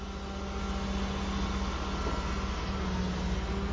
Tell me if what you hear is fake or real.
real